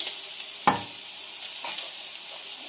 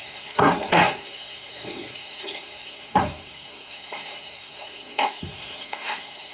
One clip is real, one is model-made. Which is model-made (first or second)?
second